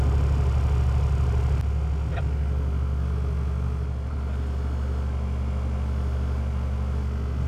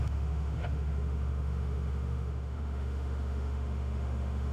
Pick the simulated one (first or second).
second